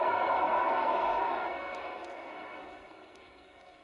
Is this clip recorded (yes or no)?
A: no